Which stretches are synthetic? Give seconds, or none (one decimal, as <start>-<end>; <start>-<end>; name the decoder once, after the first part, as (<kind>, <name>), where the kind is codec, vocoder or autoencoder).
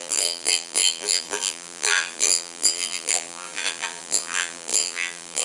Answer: 0.0-5.4 (vocoder, BigVGAN v2)